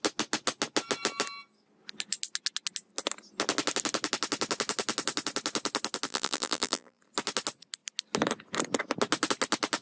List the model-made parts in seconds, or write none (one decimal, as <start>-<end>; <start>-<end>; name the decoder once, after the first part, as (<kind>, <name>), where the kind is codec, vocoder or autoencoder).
6.1-7.0 (vocoder, BigVGAN v2)